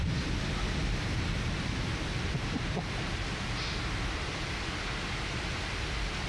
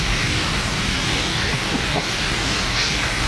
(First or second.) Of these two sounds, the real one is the first